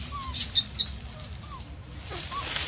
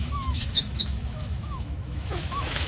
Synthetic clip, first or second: second